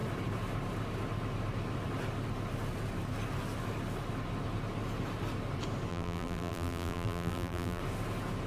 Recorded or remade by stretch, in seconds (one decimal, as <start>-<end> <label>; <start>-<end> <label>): 0.0-5.9 recorded; 5.9-7.8 remade; 7.8-8.5 recorded